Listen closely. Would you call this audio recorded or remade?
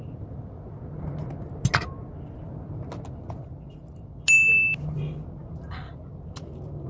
recorded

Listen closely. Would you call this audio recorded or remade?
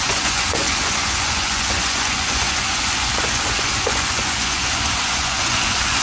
remade